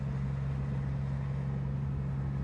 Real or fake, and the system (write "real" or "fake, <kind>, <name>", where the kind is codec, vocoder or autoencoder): real